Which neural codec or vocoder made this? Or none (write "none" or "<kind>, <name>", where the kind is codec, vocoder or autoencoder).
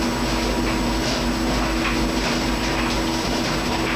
none